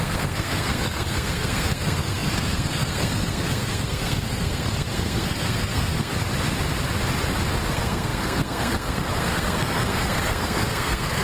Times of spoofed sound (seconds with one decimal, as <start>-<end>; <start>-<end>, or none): 0.0-6.1; 7.7-11.2